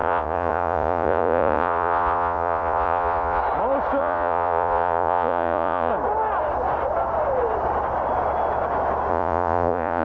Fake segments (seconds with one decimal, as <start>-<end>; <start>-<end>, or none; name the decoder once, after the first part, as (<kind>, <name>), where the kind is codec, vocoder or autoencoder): 0.0-3.4 (vocoder, Vocos); 4.0-5.9; 9.1-10.0